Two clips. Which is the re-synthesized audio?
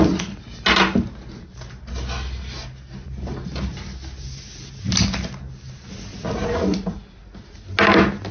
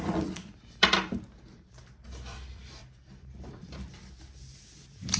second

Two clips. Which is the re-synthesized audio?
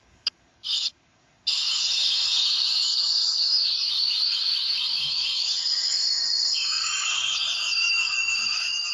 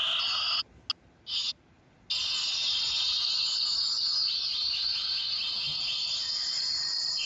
first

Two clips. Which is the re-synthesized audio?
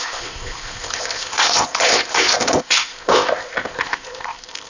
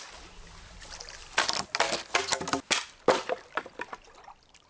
first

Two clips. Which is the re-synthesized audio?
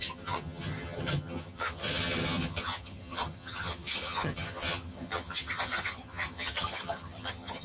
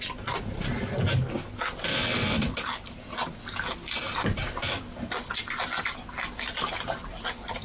first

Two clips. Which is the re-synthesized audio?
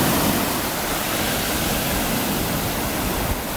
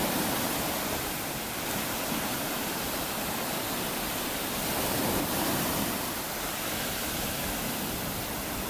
second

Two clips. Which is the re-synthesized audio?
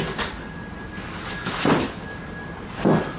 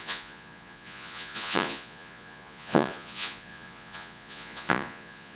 second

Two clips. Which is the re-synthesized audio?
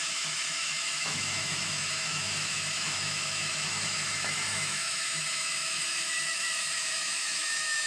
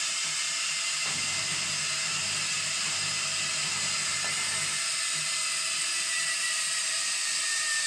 first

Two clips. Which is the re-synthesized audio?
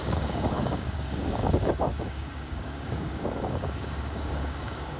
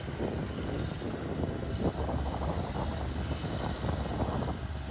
first